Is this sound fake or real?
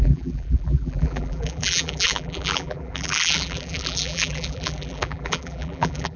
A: fake